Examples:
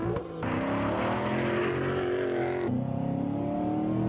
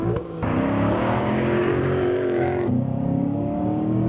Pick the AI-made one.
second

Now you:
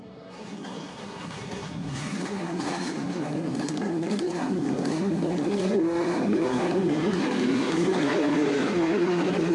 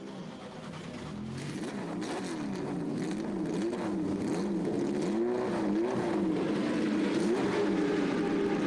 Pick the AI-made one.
first